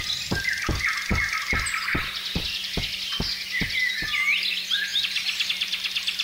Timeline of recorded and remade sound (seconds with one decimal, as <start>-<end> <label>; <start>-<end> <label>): 0.0-1.1 remade; 1.1-2.0 recorded; 2.0-3.1 remade; 3.1-3.9 recorded; 3.9-6.2 remade